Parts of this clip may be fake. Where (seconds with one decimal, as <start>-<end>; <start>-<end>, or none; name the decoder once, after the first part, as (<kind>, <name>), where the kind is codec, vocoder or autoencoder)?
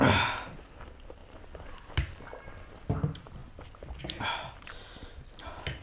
none